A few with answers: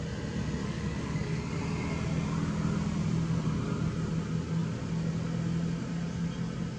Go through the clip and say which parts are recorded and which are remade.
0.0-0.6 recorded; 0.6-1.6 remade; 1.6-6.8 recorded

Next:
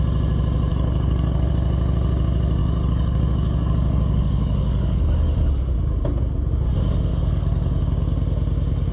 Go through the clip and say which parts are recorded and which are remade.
0.0-0.7 recorded; 0.7-1.5 remade; 1.5-2.6 recorded; 2.6-5.7 remade; 5.7-7.1 recorded; 7.1-7.8 remade; 7.8-8.9 recorded

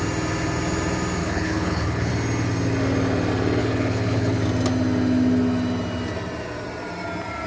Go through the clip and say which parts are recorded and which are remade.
0.0-1.2 recorded; 1.2-2.1 remade; 2.1-3.6 recorded; 3.6-4.4 remade; 4.4-7.5 recorded

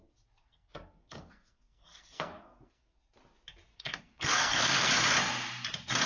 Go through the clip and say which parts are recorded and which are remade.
0.0-0.4 recorded; 0.4-3.0 remade; 3.0-3.7 recorded; 3.7-4.9 remade; 4.9-6.1 recorded

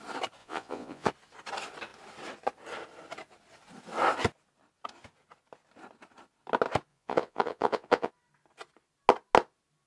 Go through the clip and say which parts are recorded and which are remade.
0.0-0.4 recorded; 0.4-1.1 remade; 1.1-6.9 recorded; 6.9-8.1 remade; 8.1-9.9 recorded

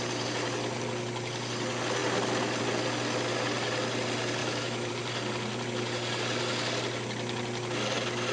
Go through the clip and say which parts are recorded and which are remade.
0.0-4.4 recorded; 4.4-4.9 remade; 4.9-8.3 recorded

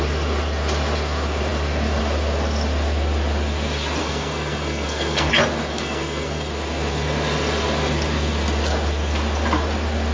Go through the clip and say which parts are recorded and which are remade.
0.0-4.0 recorded; 4.0-5.3 remade; 5.3-5.7 recorded; 5.7-6.5 remade; 6.5-10.1 recorded

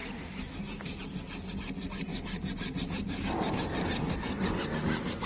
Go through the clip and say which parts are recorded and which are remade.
0.0-1.0 remade; 1.0-2.1 recorded; 2.1-4.1 remade; 4.1-5.3 recorded